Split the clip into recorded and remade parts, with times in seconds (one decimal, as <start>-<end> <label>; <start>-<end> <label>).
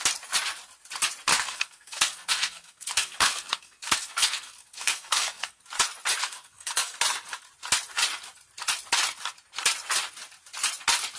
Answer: 0.0-1.3 recorded; 1.3-5.6 remade; 5.6-6.2 recorded; 6.2-7.0 remade; 7.0-11.2 recorded